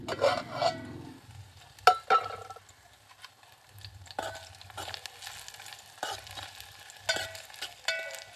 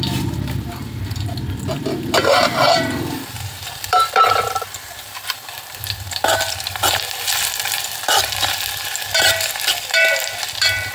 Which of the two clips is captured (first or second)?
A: first